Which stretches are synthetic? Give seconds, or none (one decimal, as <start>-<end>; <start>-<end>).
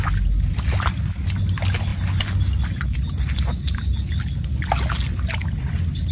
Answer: none